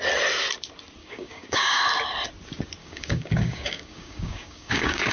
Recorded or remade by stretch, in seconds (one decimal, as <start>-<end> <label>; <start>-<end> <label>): 0.0-1.0 recorded; 1.0-1.8 remade; 1.8-2.8 recorded; 2.8-5.1 remade